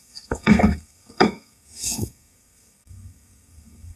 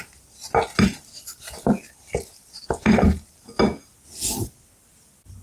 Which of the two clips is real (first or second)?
second